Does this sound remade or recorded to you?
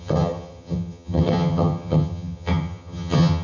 remade